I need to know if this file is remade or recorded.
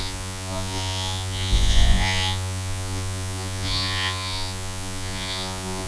remade